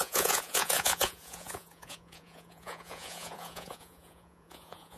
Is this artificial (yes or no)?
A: yes